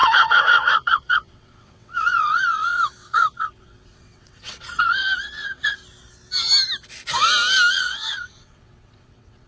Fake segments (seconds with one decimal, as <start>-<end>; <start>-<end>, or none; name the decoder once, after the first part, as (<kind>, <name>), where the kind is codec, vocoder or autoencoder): 0.0-5.8 (vocoder, WaveNeXt); 7.7-9.5